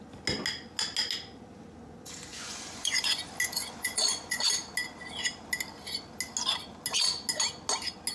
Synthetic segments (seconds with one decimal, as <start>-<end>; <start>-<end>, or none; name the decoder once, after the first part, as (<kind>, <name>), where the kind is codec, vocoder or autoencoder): 2.3-3.2 (vocoder, Vocos); 3.6-4.5